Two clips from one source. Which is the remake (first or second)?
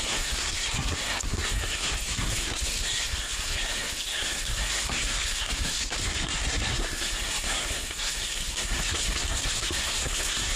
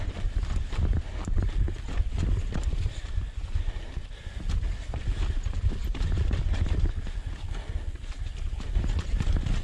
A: first